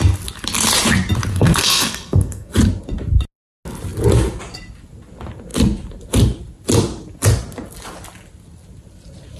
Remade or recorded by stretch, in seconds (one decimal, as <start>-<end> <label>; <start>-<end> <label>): 0.0-1.3 recorded; 1.3-2.5 remade; 2.5-9.4 recorded